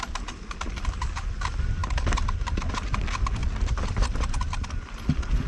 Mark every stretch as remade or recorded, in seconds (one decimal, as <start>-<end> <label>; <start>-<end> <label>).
0.0-1.8 recorded; 1.8-2.7 remade; 2.7-3.4 recorded; 3.4-4.9 remade; 4.9-5.5 recorded